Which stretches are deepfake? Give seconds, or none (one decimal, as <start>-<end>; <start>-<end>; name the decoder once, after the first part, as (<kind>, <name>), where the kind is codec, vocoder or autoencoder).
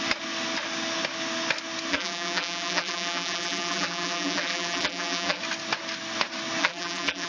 1.9-5.4 (vocoder, BigVGAN v2); 6.6-7.3